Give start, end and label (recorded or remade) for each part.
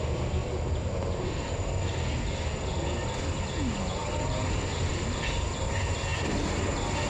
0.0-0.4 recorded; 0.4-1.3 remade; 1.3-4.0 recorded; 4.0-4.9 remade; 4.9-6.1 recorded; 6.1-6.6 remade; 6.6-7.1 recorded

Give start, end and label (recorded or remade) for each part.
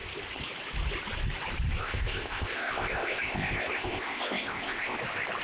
0.0-1.8 recorded; 1.8-5.0 remade; 5.0-5.4 recorded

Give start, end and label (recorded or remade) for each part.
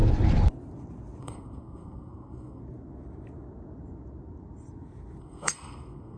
0.0-1.2 recorded; 1.2-2.6 remade; 2.6-5.2 recorded; 5.2-6.2 remade